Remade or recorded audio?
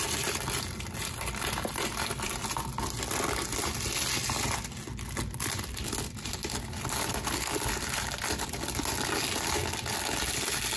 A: recorded